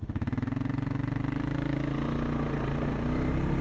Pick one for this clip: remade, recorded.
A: recorded